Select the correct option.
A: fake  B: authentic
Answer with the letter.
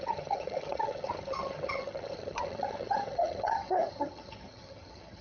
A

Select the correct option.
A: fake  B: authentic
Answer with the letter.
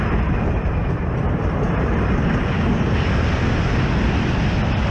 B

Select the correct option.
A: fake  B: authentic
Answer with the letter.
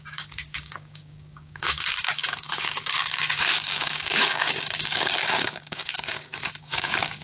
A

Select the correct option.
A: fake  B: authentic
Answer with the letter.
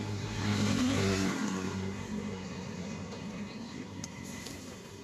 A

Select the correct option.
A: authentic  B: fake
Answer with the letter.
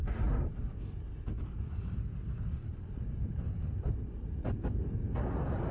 A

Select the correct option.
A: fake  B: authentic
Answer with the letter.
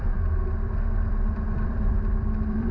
A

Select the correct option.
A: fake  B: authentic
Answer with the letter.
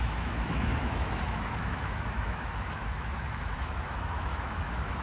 A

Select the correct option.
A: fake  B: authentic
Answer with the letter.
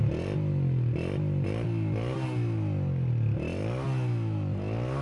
B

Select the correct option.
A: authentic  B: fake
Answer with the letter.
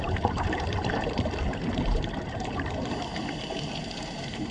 B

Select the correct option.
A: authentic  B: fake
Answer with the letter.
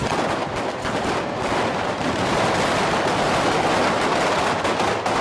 A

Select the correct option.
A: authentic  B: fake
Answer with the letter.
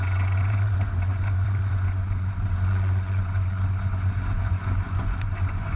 B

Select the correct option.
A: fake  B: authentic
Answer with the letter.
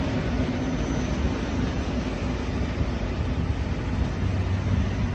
B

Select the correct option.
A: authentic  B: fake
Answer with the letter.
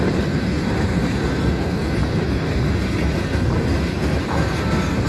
A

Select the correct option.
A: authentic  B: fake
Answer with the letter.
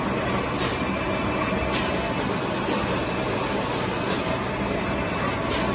A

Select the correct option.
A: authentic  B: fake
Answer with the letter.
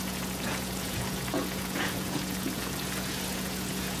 B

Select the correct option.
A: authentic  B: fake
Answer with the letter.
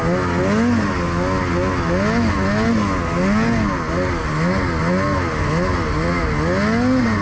A